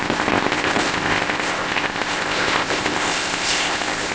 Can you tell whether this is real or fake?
fake